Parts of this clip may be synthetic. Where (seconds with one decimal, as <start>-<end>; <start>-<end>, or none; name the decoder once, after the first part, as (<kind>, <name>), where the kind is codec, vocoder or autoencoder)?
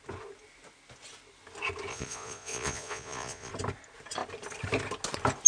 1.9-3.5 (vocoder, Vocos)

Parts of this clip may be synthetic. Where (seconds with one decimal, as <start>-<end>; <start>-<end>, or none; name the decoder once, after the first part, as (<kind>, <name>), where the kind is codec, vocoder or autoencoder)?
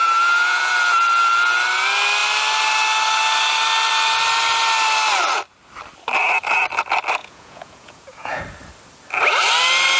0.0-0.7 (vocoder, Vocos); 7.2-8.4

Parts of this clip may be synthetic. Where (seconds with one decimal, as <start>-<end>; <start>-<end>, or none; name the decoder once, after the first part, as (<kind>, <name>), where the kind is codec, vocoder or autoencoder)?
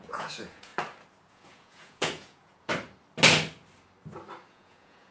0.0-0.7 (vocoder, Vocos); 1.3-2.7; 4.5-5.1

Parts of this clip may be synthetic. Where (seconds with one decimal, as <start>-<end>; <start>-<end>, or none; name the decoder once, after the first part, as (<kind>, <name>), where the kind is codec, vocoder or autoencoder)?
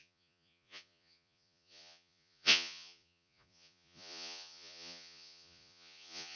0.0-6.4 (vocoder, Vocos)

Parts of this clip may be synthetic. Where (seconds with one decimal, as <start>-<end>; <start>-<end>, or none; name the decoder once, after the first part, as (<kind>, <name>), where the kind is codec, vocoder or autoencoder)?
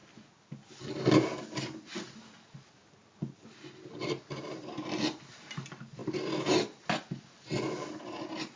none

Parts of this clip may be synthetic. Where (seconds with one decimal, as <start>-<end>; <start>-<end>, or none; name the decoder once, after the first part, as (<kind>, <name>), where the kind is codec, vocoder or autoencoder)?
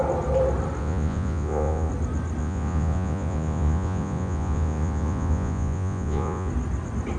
0.8-1.9 (vocoder, Vocos); 2.4-6.5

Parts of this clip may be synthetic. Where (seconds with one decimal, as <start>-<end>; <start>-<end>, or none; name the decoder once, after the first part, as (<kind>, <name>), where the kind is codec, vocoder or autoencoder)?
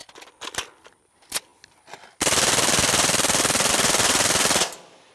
none